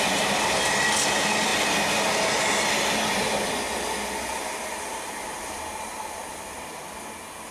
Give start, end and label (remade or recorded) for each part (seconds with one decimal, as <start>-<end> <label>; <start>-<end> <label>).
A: 0.0-6.3 recorded; 6.3-6.9 remade; 6.9-7.5 recorded